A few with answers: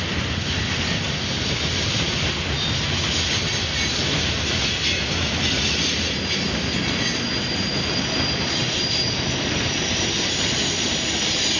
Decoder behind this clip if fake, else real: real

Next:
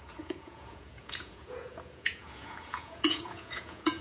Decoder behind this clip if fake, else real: fake, vocoder, Vocos